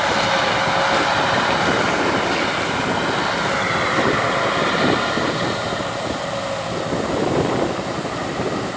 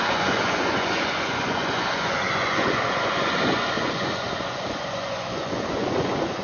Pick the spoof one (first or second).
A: second